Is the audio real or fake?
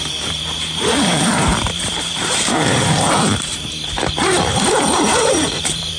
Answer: fake